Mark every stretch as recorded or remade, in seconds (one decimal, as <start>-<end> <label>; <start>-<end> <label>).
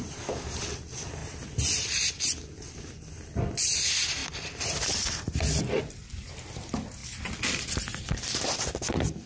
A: 0.0-4.2 recorded; 4.2-6.1 remade; 6.1-7.0 recorded; 7.0-9.3 remade